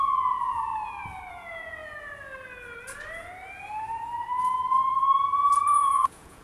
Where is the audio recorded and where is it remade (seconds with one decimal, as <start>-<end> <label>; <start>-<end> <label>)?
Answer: 0.0-0.7 remade; 0.7-1.3 recorded; 1.3-1.8 remade; 1.8-5.6 recorded; 5.6-6.4 remade